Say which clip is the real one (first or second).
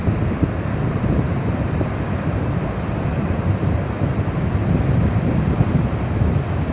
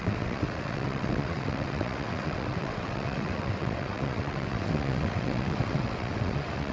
first